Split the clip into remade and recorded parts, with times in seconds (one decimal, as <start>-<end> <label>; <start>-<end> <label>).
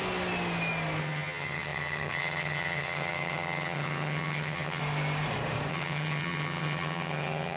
0.0-1.0 recorded; 1.0-4.8 remade; 4.8-5.7 recorded; 5.7-7.6 remade